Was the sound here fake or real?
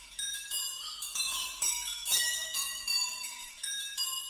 fake